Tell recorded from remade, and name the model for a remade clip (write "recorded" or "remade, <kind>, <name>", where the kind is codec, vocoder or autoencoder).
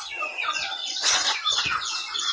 remade, vocoder, Vocos